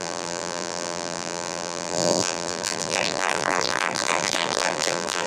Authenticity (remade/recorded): remade